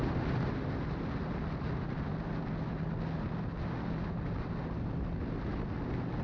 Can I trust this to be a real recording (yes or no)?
yes